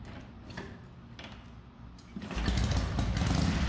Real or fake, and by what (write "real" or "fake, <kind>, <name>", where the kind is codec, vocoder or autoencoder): real